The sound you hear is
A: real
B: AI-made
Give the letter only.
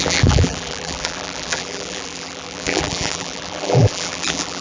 B